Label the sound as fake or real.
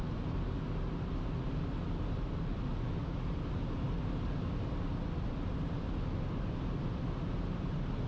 real